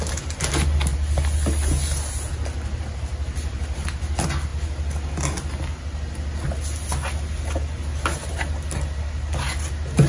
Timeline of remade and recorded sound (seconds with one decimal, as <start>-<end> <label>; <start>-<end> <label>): 0.0-10.1 recorded

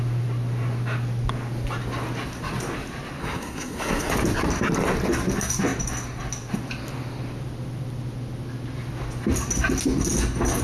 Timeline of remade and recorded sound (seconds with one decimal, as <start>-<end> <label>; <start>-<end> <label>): 0.0-3.2 recorded; 3.2-4.1 remade; 4.1-10.6 recorded

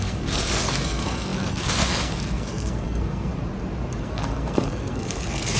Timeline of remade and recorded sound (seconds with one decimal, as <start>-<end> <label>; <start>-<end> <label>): 0.0-3.3 remade; 3.3-4.0 recorded; 4.0-5.6 remade

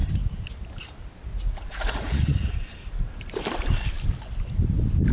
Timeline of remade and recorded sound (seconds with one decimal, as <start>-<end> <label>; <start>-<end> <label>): 0.0-1.3 recorded; 1.3-2.5 remade; 2.5-5.1 recorded

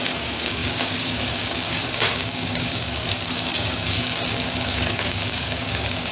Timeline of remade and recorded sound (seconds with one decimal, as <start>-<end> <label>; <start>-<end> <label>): 0.0-6.1 remade

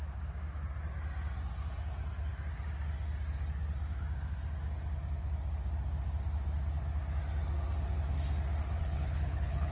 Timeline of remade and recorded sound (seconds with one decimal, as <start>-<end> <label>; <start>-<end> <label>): 0.0-8.8 recorded; 8.8-9.7 remade

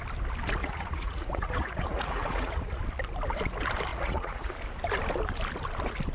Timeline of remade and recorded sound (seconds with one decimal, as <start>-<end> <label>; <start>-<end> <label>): 0.0-0.6 recorded; 0.6-2.8 remade; 2.8-3.9 recorded; 3.9-4.5 remade; 4.5-6.1 recorded

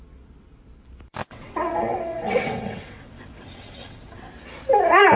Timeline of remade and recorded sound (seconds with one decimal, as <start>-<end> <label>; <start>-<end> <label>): 0.0-1.2 recorded; 1.2-4.3 remade; 4.3-5.2 recorded